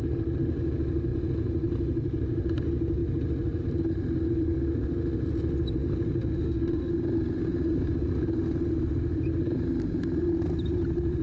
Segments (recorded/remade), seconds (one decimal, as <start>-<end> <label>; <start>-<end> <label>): 0.0-6.2 recorded; 6.2-6.9 remade; 6.9-11.2 recorded